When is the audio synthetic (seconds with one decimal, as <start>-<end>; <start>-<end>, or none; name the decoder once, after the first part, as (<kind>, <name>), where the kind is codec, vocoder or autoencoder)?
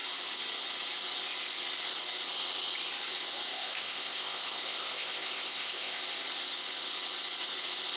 3.5-6.0 (codec, ZipCodec)